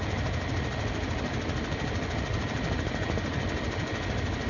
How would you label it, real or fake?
real